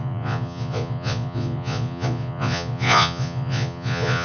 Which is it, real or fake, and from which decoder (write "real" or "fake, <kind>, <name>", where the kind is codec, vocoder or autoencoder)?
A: fake, vocoder, Vocos